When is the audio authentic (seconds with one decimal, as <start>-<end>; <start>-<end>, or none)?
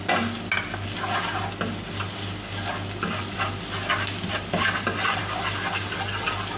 0.0-6.6